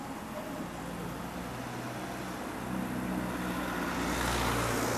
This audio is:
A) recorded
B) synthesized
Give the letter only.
A